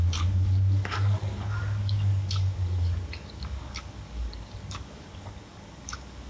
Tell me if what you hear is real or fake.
fake